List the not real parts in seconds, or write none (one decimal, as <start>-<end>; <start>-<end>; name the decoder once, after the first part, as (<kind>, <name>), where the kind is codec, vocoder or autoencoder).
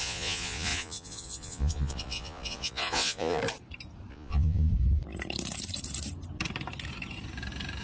0.0-3.4 (vocoder, Vocos); 4.1-4.7